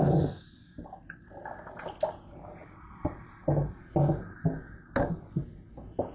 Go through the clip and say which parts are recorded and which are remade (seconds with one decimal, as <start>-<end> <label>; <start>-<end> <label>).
0.0-2.6 recorded; 2.6-3.8 remade; 3.8-6.1 recorded

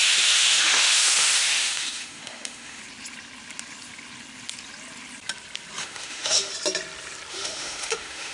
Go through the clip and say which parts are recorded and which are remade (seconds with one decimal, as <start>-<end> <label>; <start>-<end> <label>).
0.0-2.8 remade; 2.8-5.8 recorded; 5.8-6.5 remade; 6.5-7.3 recorded; 7.3-8.3 remade

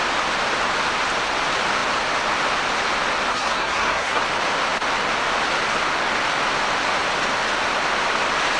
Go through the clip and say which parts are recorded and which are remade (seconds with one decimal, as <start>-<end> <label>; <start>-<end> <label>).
0.0-3.3 recorded; 3.3-4.2 remade; 4.2-8.6 recorded

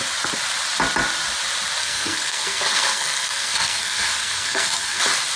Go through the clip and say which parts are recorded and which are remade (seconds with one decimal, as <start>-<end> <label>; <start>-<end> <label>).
0.0-1.8 recorded; 1.8-5.0 remade; 5.0-5.4 recorded

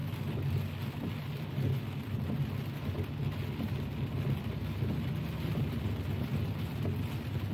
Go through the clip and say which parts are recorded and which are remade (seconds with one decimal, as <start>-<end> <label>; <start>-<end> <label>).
0.0-7.5 recorded

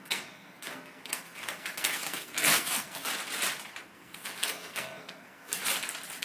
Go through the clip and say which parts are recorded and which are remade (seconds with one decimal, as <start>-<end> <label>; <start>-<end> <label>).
0.0-3.1 remade; 3.1-3.8 recorded; 3.8-5.6 remade; 5.6-6.2 recorded

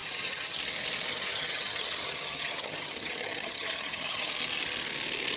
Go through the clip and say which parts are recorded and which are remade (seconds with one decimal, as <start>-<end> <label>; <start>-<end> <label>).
0.0-0.6 remade; 0.6-1.1 recorded; 1.1-4.3 remade; 4.3-5.4 recorded